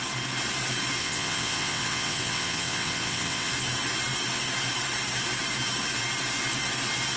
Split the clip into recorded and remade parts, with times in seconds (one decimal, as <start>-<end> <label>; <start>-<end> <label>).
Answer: 0.0-1.0 recorded; 1.0-3.5 remade; 3.5-7.2 recorded